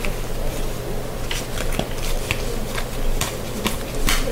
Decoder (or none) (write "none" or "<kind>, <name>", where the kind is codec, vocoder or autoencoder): none